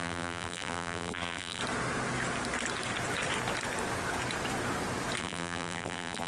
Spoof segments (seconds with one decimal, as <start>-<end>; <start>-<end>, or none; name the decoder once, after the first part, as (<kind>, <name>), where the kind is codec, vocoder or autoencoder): 0.0-1.6 (vocoder, BigVGAN v2); 5.2-6.3